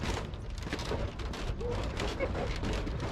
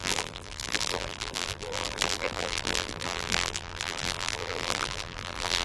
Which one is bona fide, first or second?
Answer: first